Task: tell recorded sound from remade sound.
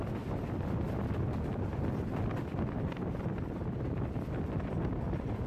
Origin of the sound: recorded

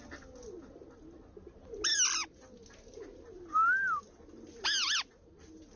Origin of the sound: recorded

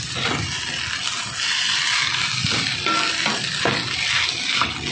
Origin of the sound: recorded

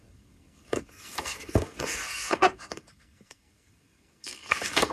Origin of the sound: remade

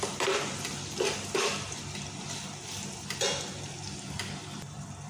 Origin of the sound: remade